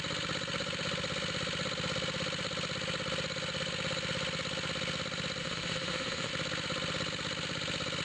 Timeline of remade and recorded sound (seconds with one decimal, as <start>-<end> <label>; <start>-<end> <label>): 0.0-5.4 recorded; 5.4-6.3 remade; 6.3-8.0 recorded